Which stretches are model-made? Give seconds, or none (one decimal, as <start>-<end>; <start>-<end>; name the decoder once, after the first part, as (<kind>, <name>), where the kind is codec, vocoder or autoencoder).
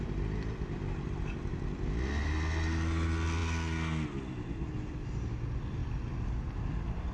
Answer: none